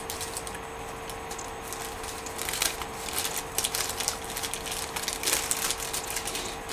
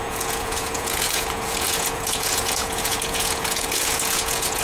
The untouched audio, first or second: first